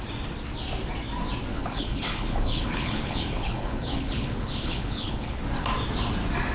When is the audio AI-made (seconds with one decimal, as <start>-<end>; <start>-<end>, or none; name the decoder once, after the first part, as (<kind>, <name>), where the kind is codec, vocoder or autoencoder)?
1.5-5.4 (codec, HILCodec)